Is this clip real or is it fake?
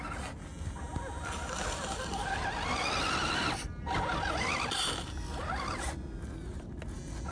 real